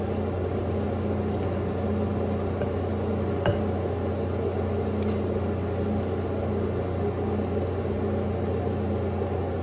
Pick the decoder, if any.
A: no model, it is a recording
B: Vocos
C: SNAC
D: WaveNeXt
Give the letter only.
A